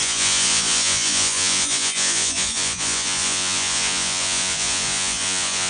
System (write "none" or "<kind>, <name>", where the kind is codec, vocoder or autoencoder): vocoder, Vocos